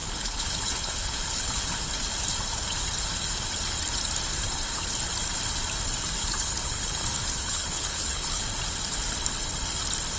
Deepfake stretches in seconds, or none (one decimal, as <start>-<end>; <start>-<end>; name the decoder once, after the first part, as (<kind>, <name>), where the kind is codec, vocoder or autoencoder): 0.0-1.9 (codec, HILCodec); 6.2-8.4